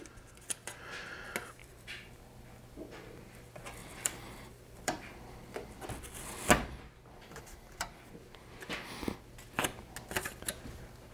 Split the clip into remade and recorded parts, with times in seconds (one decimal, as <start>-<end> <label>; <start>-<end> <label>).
0.0-1.6 recorded; 1.6-2.2 remade; 2.2-3.8 recorded; 3.8-5.1 remade; 5.1-11.1 recorded